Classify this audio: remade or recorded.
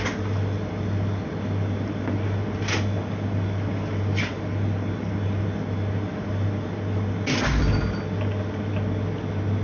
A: recorded